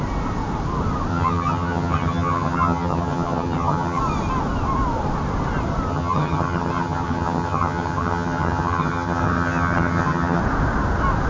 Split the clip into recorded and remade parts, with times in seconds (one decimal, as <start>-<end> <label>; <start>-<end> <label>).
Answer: 0.0-1.1 recorded; 1.1-4.0 remade; 4.0-5.9 recorded; 5.9-10.4 remade; 10.4-11.3 recorded